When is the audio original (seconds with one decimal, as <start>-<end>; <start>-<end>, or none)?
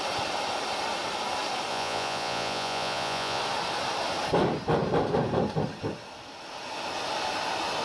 0.0-1.7; 3.4-7.8